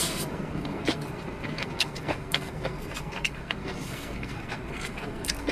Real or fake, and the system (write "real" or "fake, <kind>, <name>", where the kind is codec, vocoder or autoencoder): fake, codec, SNAC